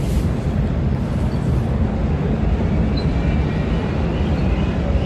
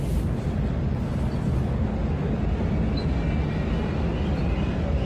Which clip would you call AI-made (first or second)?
first